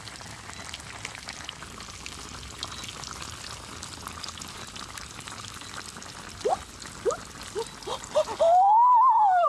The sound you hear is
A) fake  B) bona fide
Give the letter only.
B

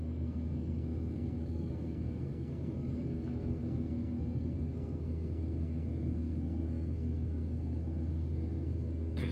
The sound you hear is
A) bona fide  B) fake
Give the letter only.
B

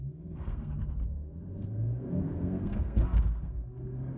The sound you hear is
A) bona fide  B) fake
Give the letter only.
B